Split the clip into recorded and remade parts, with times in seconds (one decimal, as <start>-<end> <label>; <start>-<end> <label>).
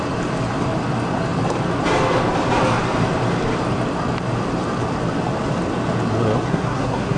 0.0-6.5 recorded; 6.5-7.2 remade